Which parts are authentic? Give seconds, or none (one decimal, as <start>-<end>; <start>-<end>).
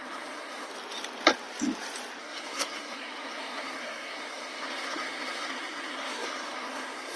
0.7-2.2